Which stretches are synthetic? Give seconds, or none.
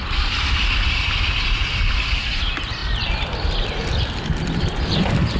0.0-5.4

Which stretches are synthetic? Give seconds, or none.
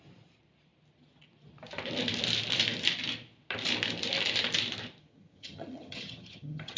5.0-6.8